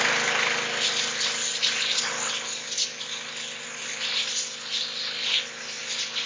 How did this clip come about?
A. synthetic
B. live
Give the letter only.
B